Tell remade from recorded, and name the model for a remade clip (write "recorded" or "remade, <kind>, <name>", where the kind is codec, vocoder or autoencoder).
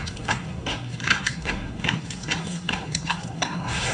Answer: remade, codec, SNAC